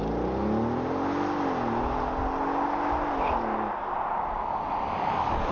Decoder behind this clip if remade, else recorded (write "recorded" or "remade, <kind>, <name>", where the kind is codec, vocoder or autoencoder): recorded